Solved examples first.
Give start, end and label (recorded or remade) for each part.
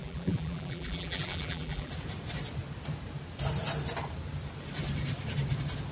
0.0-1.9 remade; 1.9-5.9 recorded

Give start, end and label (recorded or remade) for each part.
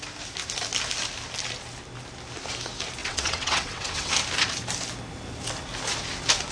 0.0-3.0 recorded; 3.0-4.1 remade; 4.1-6.5 recorded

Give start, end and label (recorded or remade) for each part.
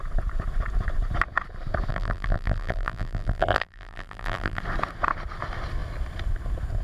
0.0-1.9 recorded; 1.9-4.6 remade; 4.6-6.8 recorded